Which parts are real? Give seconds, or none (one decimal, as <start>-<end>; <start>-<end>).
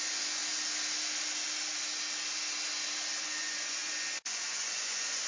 0.4-3.2